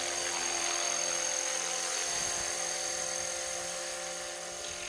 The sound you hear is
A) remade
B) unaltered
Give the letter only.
B